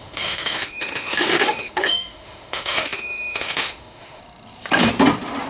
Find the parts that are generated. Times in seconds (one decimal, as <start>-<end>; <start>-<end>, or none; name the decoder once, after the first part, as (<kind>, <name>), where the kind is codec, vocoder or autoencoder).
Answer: 0.0-4.2 (autoencoder, DAC-VAE)